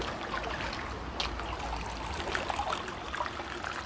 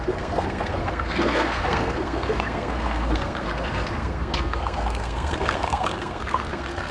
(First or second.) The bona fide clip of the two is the first